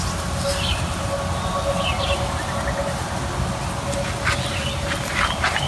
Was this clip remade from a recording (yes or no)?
no